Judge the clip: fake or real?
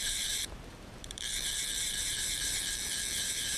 fake